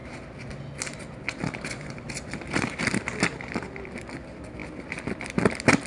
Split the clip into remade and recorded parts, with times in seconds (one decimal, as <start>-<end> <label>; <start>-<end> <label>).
0.0-5.9 recorded